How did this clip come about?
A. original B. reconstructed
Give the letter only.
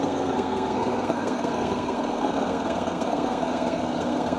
B